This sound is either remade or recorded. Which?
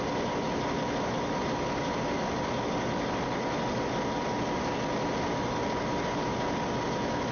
recorded